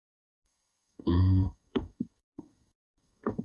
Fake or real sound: fake